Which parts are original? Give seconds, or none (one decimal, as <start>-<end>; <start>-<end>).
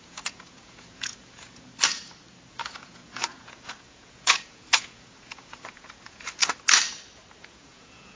1.7-2.5; 6.4-7.4